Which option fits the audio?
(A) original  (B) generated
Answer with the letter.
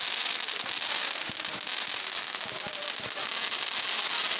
A